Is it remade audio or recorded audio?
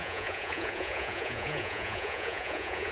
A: remade